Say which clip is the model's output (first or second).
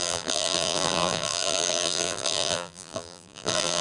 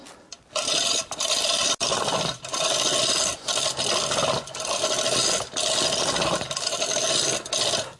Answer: first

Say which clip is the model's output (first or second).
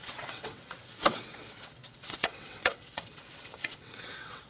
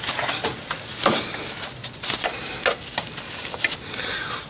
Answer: first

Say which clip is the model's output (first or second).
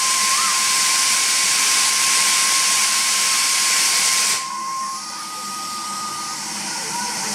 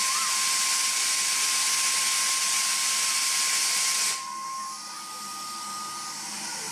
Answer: first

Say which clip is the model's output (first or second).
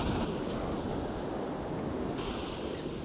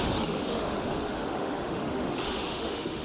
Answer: second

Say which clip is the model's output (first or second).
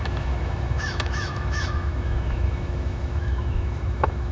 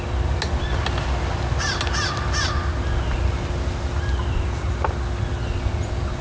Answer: first